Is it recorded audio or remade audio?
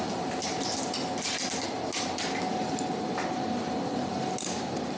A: recorded